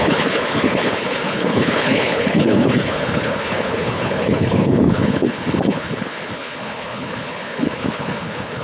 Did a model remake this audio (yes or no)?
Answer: yes